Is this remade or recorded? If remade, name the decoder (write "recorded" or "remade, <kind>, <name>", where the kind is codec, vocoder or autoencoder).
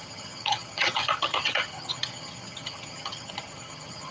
remade, vocoder, HiFi-GAN